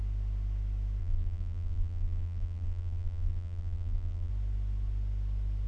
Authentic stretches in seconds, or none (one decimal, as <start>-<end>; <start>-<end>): 0.0-1.0; 4.3-5.7